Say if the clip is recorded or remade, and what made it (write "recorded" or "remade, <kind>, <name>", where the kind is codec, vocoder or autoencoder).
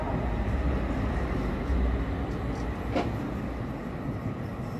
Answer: recorded